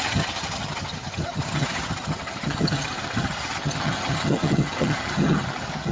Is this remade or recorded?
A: remade